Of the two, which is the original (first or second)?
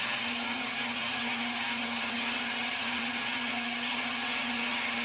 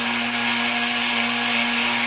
second